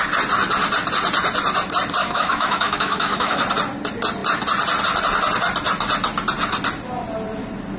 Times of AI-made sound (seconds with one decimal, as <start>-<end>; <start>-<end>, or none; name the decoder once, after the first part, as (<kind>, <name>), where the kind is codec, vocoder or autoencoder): 2.0-3.4 (autoencoder, DAC-VAE)